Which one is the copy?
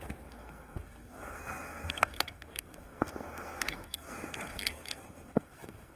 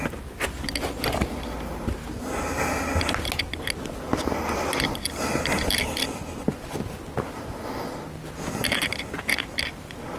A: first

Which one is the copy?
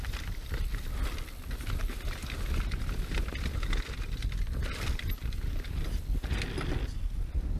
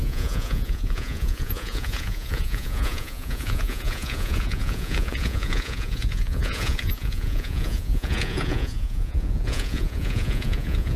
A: second